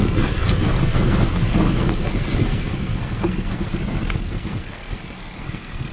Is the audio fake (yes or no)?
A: yes